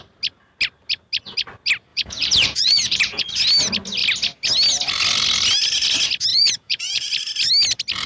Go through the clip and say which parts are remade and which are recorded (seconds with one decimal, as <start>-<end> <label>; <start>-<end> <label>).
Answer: 0.0-1.9 recorded; 1.9-3.3 remade; 3.3-6.3 recorded; 6.3-7.1 remade; 7.1-8.1 recorded